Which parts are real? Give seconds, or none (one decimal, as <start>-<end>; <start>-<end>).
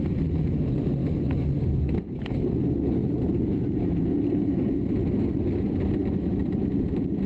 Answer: 1.0-3.1; 5.0-5.6; 6.0-6.8